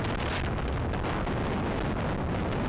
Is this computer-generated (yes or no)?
no